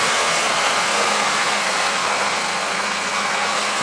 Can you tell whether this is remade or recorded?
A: remade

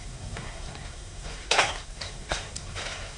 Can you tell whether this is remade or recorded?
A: remade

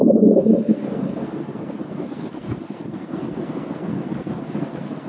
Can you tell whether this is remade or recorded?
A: remade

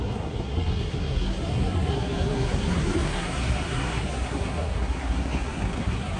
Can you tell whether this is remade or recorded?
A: remade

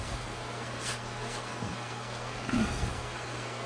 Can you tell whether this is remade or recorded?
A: remade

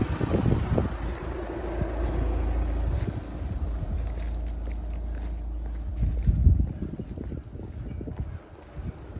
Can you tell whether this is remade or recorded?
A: recorded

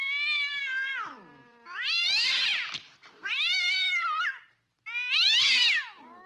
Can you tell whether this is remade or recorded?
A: recorded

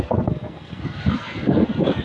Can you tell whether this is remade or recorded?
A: remade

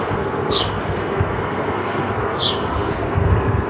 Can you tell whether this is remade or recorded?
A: remade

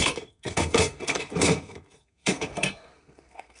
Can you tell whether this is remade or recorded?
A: remade